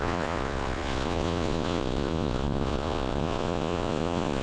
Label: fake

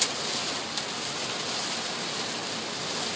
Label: real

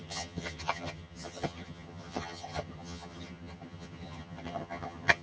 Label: fake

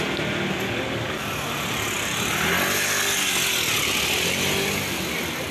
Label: real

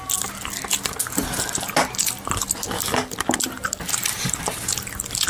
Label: real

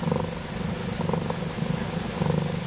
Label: real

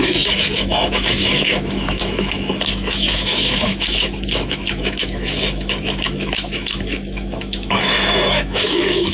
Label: fake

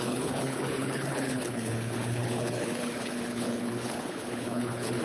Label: fake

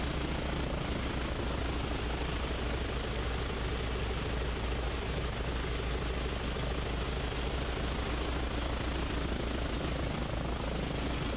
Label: real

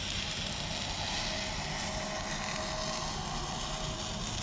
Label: real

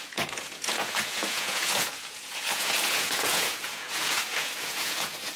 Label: fake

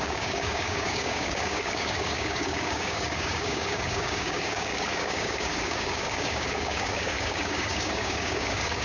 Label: fake